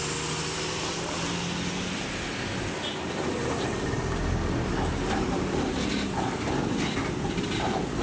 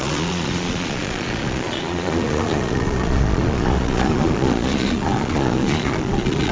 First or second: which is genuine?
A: first